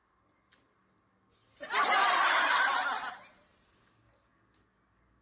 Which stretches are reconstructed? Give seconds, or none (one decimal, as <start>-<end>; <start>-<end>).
none